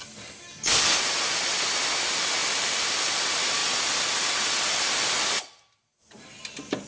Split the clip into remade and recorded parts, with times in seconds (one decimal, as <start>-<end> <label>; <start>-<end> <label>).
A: 0.0-2.4 recorded; 2.4-3.2 remade; 3.2-3.6 recorded; 3.6-6.9 remade